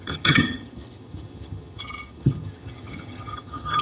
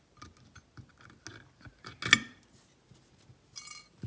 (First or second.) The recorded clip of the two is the second